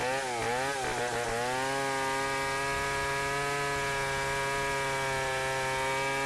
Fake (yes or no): no